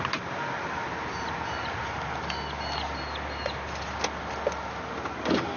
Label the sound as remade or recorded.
recorded